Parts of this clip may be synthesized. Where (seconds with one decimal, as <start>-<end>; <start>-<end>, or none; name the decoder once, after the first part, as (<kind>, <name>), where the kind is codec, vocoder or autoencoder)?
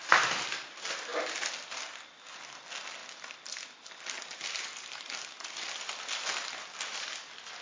none